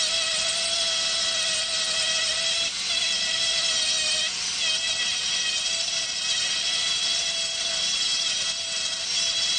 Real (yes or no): yes